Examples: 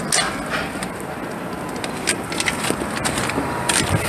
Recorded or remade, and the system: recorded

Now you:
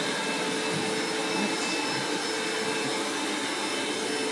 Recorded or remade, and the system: recorded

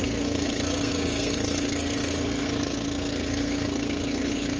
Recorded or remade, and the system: remade, codec, SNAC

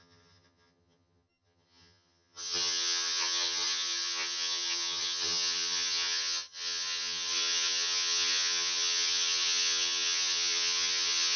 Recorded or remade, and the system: remade, vocoder, HiFi-GAN